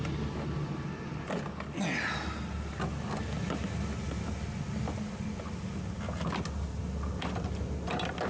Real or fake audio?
real